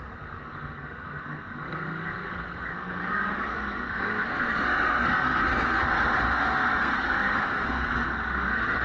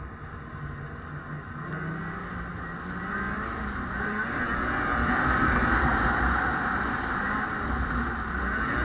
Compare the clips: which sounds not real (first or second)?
first